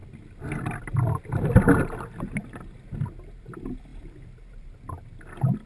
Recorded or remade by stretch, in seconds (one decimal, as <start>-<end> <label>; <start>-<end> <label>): 0.0-5.7 recorded